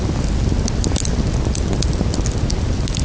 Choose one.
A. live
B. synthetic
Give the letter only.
A